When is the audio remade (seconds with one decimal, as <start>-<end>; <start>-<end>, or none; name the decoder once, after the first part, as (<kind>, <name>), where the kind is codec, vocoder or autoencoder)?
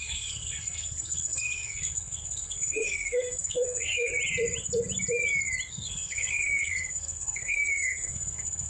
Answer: 0.0-4.1 (codec, SNAC); 5.7-8.7